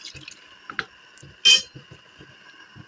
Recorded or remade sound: recorded